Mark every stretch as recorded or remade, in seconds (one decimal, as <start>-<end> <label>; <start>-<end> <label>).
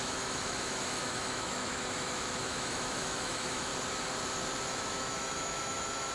0.0-3.7 remade; 3.7-4.7 recorded; 4.7-6.1 remade